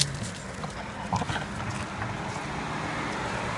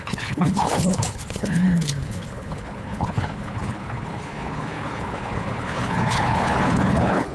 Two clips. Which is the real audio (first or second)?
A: first